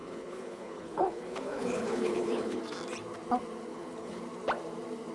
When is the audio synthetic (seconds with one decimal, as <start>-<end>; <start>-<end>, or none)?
0.0-2.6; 3.7-4.2